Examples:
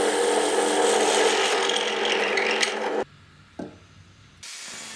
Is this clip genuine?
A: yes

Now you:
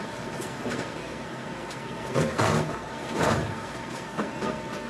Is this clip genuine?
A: no